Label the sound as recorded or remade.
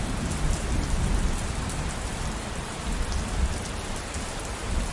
recorded